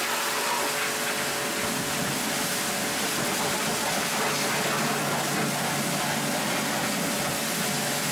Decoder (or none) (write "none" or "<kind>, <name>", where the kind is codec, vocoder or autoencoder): none